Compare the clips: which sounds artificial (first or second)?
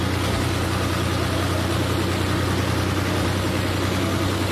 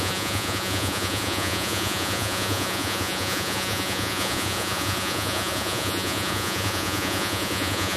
second